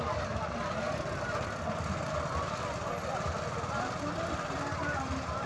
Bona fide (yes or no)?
yes